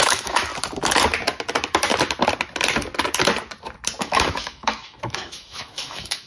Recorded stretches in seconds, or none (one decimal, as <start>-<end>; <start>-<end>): 0.5-4.0